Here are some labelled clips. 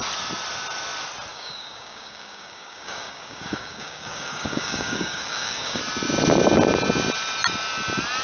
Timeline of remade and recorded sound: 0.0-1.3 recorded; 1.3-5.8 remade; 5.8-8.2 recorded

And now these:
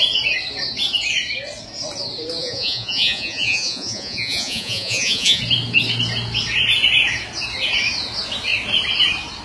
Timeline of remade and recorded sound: 0.0-2.4 recorded; 2.4-5.4 remade; 5.4-9.4 recorded

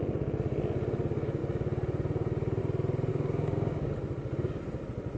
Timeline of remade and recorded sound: 0.0-3.1 recorded; 3.1-3.9 remade; 3.9-5.2 recorded